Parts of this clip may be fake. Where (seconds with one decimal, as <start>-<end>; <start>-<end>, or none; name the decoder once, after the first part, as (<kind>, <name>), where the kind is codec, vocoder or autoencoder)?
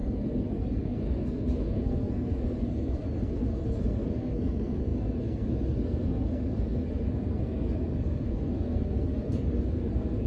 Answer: 0.0-10.3 (codec, SNAC)